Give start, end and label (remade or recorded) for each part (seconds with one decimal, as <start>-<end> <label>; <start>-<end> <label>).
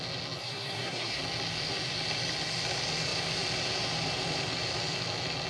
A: 0.0-0.4 recorded; 0.4-1.2 remade; 1.2-5.5 recorded